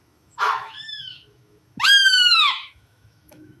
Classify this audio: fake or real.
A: fake